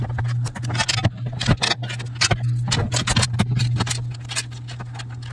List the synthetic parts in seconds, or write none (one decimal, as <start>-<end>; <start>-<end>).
none

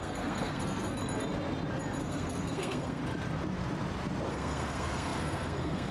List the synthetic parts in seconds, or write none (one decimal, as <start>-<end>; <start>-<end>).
0.0-1.0; 2.0-3.0; 4.3-5.9

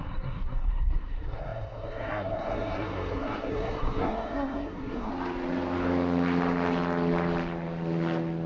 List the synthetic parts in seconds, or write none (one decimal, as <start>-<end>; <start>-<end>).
0.0-5.1

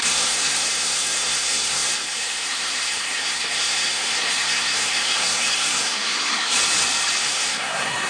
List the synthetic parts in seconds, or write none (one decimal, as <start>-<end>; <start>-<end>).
0.0-6.6; 7.2-8.1